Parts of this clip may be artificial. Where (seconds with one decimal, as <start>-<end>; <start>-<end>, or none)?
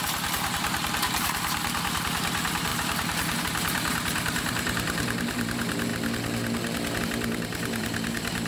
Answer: 0.0-5.9; 7.0-8.5